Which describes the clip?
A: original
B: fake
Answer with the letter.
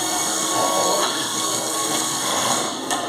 B